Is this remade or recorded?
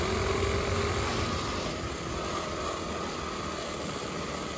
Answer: recorded